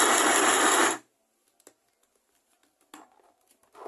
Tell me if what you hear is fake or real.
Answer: real